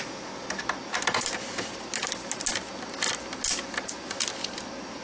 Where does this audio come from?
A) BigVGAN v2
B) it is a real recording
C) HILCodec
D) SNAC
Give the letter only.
B